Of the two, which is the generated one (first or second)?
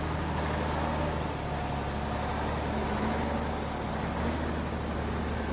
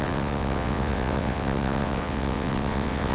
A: second